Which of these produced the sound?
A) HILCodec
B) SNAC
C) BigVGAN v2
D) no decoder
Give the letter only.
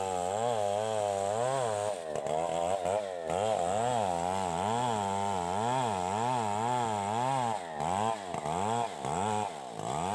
D